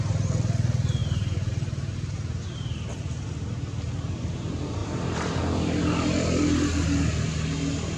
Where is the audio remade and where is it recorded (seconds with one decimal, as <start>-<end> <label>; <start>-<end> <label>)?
0.0-1.0 recorded; 1.0-3.0 remade; 3.0-4.8 recorded; 4.8-5.4 remade; 5.4-8.0 recorded